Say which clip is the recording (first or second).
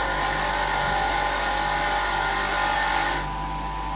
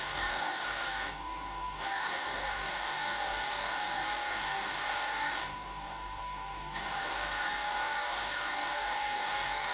first